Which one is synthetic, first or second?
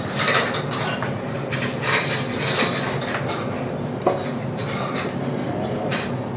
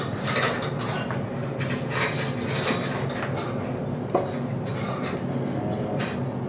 first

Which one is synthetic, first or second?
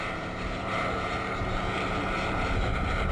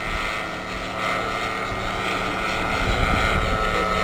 first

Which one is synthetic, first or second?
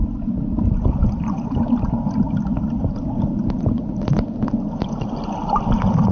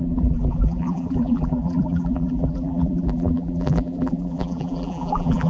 second